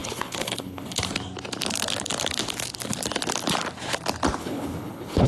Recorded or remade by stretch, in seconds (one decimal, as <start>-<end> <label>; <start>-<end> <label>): 0.0-1.0 remade; 1.0-4.4 recorded; 4.4-5.3 remade

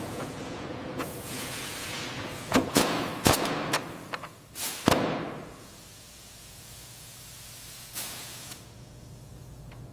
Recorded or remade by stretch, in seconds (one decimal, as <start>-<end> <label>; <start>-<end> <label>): 0.0-3.1 remade; 3.1-5.6 recorded; 5.6-9.9 remade

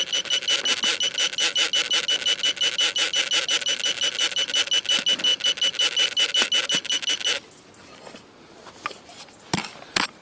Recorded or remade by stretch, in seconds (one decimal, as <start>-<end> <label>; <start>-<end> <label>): 0.0-10.2 recorded

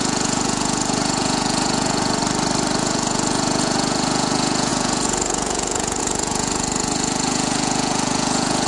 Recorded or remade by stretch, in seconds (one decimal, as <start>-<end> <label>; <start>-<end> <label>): 0.0-2.2 remade; 2.2-2.8 recorded; 2.8-8.7 remade

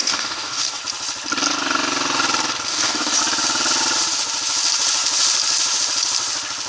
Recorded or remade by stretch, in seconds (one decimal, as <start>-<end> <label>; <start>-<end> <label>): 0.0-0.8 remade; 0.8-2.7 recorded; 2.7-3.2 remade; 3.2-6.7 recorded

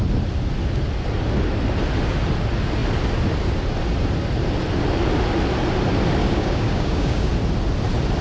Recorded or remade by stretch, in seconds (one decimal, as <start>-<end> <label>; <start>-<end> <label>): 0.0-6.2 recorded; 6.2-7.3 remade; 7.3-8.2 recorded

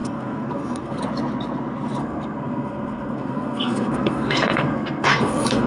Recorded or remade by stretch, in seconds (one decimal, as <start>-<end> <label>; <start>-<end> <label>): 0.0-1.0 remade; 1.0-2.0 recorded; 2.0-5.7 remade